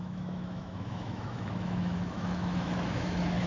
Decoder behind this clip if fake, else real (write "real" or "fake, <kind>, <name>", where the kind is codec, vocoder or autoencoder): fake, autoencoder, DAC-VAE